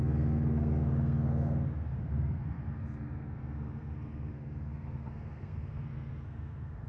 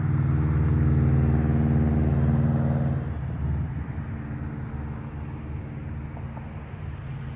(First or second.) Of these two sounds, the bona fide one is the second